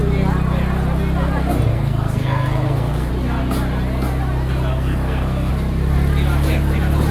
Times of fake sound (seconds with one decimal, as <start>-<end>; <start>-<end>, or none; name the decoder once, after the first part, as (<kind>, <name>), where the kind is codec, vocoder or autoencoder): 1.7-3.1 (codec, SNAC); 4.7-5.5

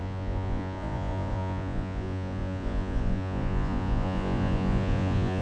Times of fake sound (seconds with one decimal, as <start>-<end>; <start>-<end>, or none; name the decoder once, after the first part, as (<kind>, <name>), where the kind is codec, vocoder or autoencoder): 0.0-5.4 (vocoder, Vocos)

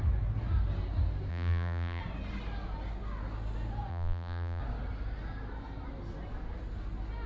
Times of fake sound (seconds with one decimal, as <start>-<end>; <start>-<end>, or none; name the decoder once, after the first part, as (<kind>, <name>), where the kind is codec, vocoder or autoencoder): 1.3-2.0 (vocoder, BigVGAN v2); 3.9-4.6

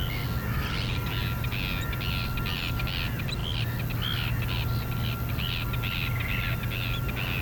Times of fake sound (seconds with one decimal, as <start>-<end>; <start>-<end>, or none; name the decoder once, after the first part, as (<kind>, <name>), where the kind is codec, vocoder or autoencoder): none

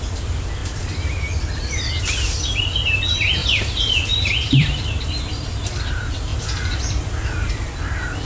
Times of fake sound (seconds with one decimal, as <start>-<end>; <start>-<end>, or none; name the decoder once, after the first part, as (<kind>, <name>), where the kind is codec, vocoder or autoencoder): 3.4-5.5 (vocoder, BigVGAN v2); 6.3-7.5

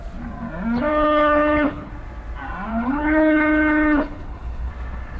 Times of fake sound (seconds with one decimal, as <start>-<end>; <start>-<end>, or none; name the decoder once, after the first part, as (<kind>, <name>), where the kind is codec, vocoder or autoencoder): 0.9-1.9 (codec, HILCodec); 2.7-4.7

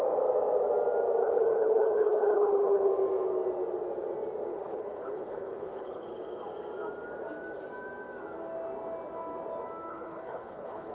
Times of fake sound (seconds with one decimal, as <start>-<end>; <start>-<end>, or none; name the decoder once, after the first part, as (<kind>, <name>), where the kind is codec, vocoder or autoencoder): 1.2-2.9 (codec, HILCodec); 4.5-6.1; 9.9-10.9